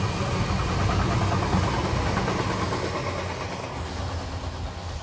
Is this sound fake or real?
real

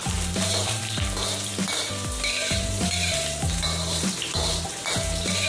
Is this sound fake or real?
fake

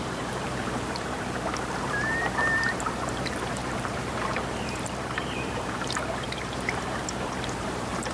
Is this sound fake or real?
fake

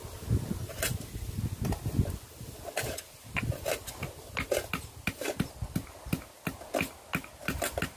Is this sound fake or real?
real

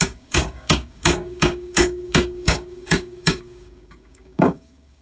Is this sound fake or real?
fake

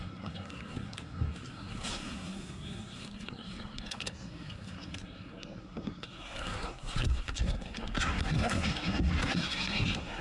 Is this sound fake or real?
fake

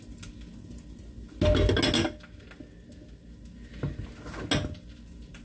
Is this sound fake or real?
real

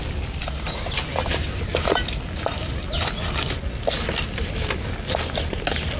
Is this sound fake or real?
real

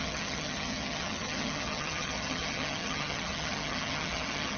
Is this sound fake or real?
fake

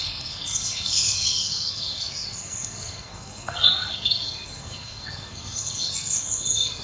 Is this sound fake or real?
fake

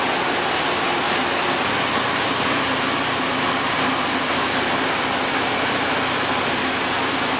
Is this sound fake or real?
real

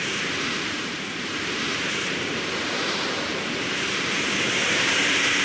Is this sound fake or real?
fake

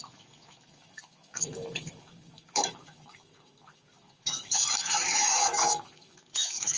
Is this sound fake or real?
fake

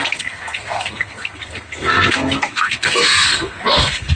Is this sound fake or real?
fake